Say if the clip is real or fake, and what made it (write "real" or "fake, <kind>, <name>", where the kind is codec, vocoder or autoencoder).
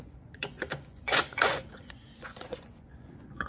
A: fake, vocoder, Vocos